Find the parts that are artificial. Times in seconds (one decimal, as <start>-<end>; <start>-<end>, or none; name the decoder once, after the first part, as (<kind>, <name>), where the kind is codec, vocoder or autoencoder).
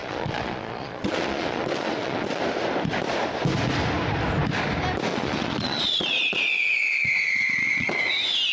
0.0-2.4 (vocoder, Vocos); 5.1-8.1